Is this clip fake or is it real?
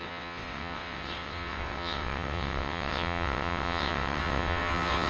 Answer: fake